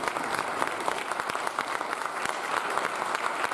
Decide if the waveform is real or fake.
real